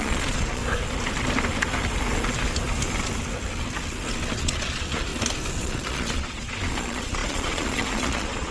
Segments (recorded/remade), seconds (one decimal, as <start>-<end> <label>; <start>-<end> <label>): 0.0-0.6 remade; 0.6-4.4 recorded; 4.4-5.1 remade; 5.1-5.6 recorded; 5.6-8.5 remade